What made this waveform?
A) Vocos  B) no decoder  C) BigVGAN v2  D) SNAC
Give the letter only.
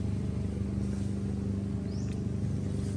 B